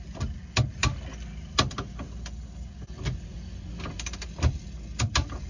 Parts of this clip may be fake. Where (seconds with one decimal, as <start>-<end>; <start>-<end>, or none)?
none